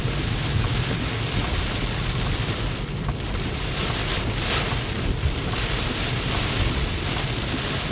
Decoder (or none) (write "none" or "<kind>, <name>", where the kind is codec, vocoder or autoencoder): none